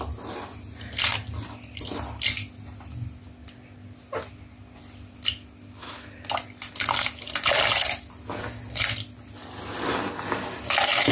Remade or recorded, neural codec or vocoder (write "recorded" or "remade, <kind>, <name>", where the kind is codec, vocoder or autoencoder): recorded